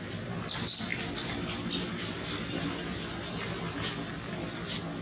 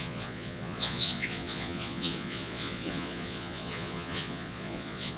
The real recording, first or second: first